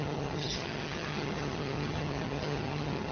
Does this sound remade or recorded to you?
remade